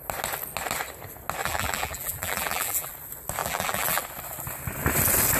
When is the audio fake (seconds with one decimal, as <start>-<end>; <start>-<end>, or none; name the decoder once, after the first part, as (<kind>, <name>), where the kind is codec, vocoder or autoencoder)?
1.4-2.9 (vocoder, BigVGAN v2); 3.4-4.0